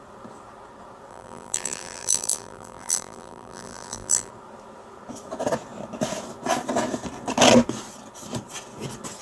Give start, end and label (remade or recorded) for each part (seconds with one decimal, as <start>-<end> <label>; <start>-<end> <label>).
0.0-1.1 recorded; 1.1-4.3 remade; 4.3-9.2 recorded